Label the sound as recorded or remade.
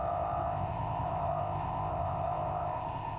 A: remade